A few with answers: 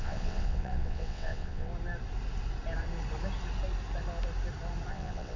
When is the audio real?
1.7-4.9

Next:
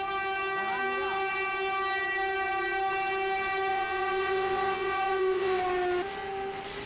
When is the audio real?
0.0-3.7; 5.6-6.9

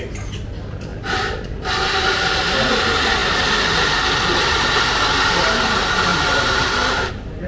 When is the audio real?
0.0-6.1; 7.1-7.5

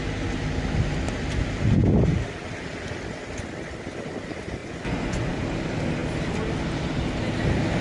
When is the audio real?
0.0-4.6; 5.3-7.8

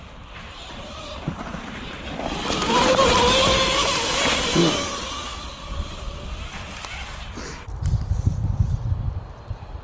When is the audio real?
0.0-1.3; 3.0-8.1

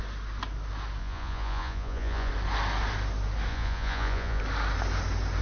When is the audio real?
0.0-1.0; 2.3-3.5; 4.4-5.4